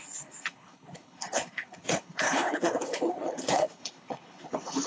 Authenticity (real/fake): fake